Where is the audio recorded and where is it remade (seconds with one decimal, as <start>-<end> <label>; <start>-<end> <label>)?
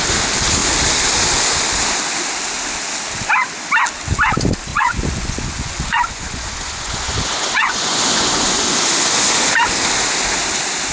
0.0-4.7 recorded; 4.7-9.5 remade; 9.5-10.9 recorded